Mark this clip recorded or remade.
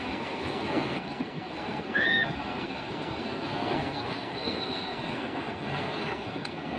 remade